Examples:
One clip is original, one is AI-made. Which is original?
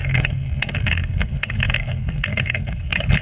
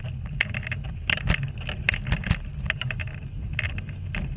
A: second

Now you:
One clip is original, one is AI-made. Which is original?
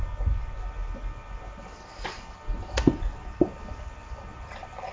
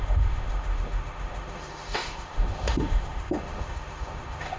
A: first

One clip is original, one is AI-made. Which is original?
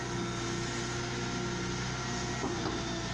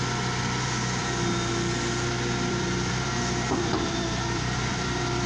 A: first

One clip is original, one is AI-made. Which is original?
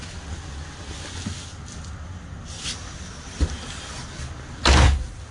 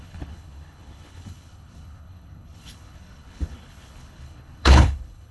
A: first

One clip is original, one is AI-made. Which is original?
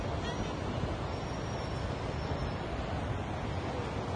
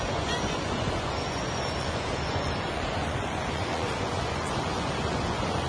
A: first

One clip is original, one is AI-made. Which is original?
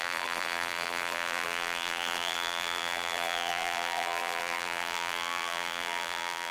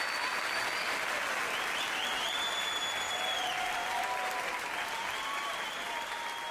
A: second